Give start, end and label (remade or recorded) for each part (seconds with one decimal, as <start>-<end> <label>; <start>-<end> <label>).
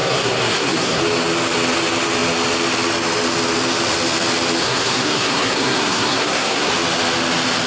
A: 0.0-1.0 remade; 1.0-4.6 recorded; 4.6-6.7 remade; 6.7-7.7 recorded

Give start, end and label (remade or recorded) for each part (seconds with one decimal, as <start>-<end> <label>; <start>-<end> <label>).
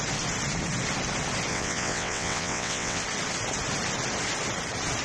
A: 0.0-1.5 recorded; 1.5-3.0 remade; 3.0-5.0 recorded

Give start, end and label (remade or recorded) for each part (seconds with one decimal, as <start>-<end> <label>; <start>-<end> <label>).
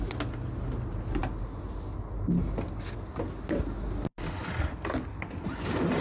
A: 0.0-6.0 recorded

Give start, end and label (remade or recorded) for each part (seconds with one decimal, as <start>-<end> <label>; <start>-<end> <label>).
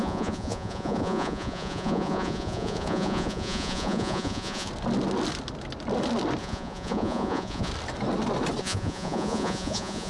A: 0.0-4.7 remade; 4.7-6.4 recorded; 6.4-7.7 remade; 7.7-8.6 recorded; 8.6-10.1 remade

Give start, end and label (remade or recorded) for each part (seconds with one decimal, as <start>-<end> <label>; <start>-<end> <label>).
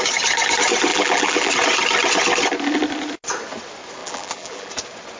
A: 0.0-0.9 recorded; 0.9-1.5 remade; 1.5-4.0 recorded; 4.0-4.7 remade; 4.7-5.2 recorded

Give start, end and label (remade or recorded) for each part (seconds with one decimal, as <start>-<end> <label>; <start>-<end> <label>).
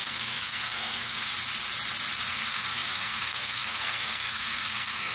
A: 0.0-1.3 remade; 1.3-2.3 recorded; 2.3-5.1 remade